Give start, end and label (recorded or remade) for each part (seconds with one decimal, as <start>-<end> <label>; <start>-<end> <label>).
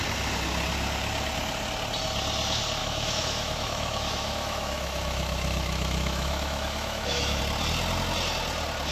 0.0-2.8 recorded; 2.8-7.4 remade; 7.4-8.9 recorded